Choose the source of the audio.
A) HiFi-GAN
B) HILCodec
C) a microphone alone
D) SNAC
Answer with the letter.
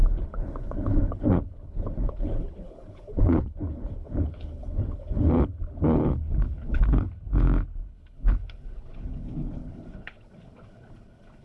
B